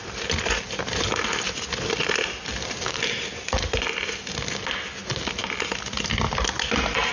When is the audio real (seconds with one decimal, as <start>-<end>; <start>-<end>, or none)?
0.0-7.1